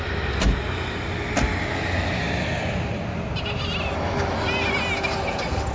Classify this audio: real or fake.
real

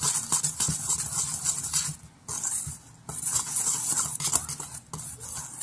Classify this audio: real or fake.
real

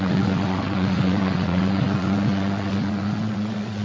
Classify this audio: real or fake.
fake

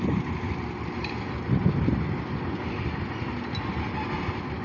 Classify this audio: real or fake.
real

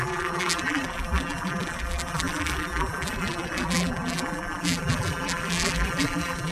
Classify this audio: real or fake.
fake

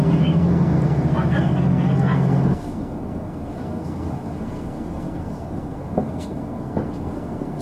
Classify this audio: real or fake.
fake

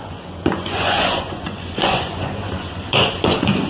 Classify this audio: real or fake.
fake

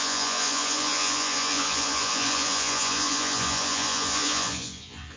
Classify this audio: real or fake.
fake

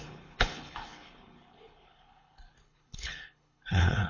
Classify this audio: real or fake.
fake